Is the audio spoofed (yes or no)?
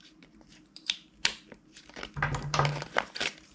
yes